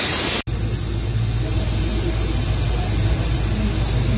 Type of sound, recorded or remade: recorded